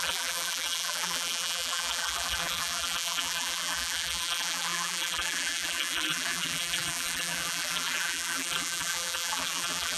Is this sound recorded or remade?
remade